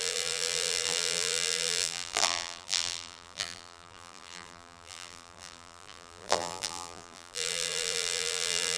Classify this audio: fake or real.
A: fake